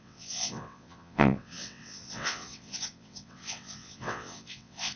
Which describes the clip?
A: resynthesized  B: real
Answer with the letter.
A